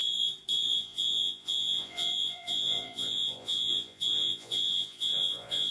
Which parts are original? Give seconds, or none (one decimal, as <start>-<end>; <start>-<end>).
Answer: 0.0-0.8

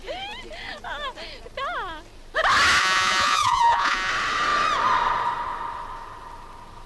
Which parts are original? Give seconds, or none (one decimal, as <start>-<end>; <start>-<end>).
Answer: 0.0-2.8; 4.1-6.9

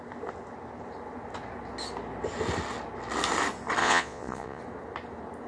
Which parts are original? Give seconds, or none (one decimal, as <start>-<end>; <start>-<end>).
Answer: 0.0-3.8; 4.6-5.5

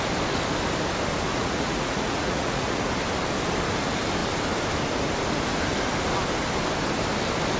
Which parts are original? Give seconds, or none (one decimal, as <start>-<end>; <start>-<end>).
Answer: 0.0-1.3; 2.9-7.6